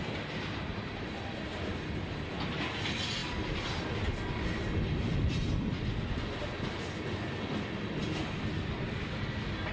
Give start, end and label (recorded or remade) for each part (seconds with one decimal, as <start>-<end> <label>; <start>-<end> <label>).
0.0-9.7 recorded

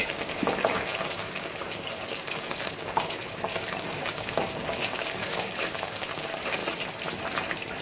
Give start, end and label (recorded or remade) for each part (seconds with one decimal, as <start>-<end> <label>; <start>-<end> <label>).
0.0-6.6 remade; 6.6-7.8 recorded

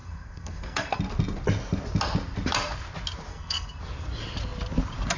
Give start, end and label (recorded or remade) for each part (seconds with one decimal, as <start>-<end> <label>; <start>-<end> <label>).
0.0-1.0 remade; 1.0-3.3 recorded; 3.3-3.8 remade; 3.8-5.2 recorded

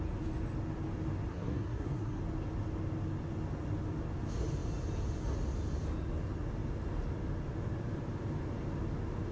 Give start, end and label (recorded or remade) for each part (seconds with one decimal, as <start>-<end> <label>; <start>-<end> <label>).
0.0-1.3 recorded; 1.3-2.2 remade; 2.2-9.3 recorded